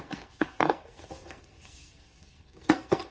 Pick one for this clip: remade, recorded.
remade